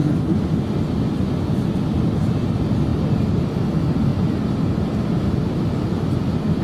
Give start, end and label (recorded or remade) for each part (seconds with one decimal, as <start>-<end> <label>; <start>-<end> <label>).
0.0-2.9 recorded; 2.9-3.5 remade; 3.5-4.1 recorded; 4.1-5.9 remade; 5.9-6.6 recorded